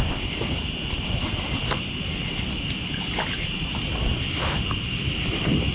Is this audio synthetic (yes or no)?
no